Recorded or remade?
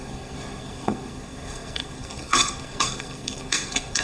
remade